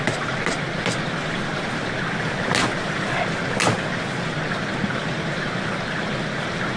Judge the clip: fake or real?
real